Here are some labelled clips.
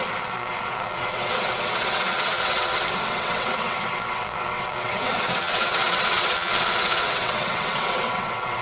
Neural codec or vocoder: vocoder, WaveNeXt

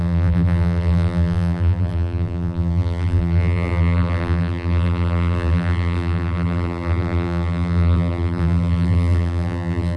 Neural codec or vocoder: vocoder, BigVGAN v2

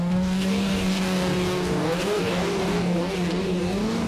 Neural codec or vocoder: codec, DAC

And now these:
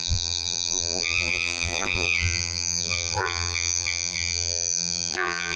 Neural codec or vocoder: vocoder, BigVGAN v2